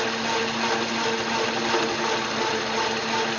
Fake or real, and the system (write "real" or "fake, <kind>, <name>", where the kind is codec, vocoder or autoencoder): real